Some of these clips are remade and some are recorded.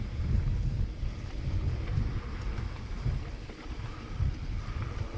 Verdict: recorded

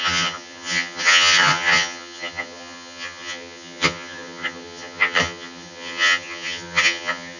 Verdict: remade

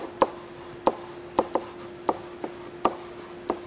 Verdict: recorded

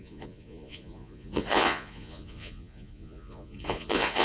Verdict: remade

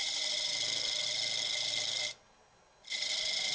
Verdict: recorded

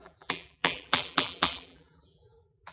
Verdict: remade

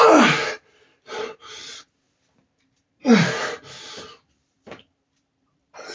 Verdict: remade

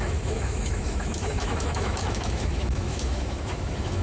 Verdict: remade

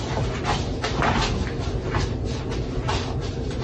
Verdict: recorded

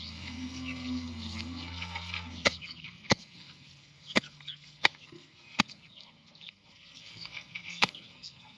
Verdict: remade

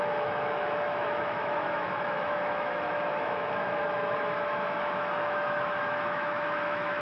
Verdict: remade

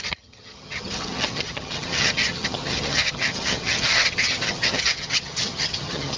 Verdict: remade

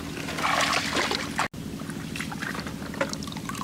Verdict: recorded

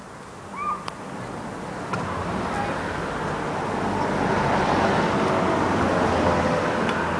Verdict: recorded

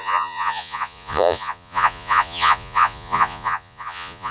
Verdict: remade